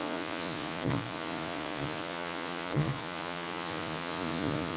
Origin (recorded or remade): remade